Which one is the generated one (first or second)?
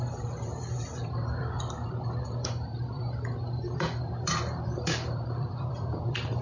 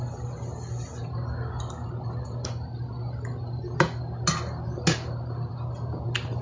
first